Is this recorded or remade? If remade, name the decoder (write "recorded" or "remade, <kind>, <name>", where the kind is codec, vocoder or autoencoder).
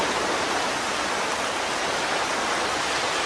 recorded